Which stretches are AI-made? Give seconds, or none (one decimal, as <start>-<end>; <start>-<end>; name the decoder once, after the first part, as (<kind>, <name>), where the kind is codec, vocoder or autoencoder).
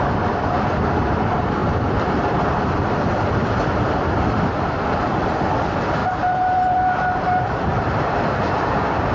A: 3.4-4.4 (vocoder, BigVGAN v2); 6.0-8.0